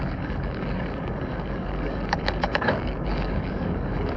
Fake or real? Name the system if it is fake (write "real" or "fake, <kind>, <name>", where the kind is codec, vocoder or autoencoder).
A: fake, codec, DAC